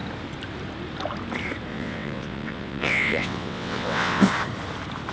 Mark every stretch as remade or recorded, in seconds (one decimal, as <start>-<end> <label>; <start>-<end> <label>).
0.0-1.7 recorded; 1.7-4.3 remade; 4.3-5.1 recorded